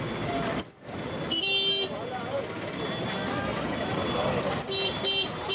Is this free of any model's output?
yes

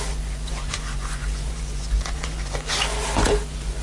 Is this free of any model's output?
no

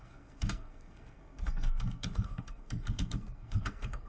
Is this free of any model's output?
no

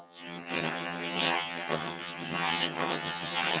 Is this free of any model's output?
no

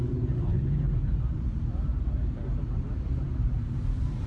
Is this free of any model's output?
no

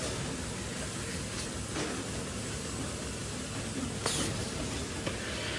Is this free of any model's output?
yes